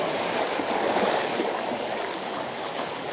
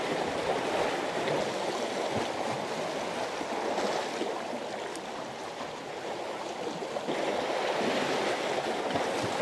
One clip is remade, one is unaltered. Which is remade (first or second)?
first